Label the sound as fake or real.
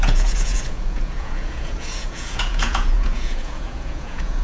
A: fake